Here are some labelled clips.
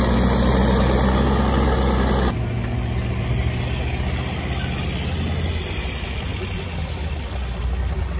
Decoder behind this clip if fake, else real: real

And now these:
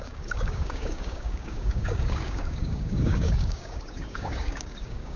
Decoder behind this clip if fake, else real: fake, codec, DAC